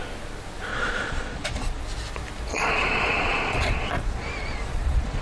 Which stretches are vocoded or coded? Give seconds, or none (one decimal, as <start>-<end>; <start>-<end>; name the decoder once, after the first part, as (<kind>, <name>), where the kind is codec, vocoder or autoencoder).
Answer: 0.7-1.8 (vocoder, Vocos); 2.5-5.2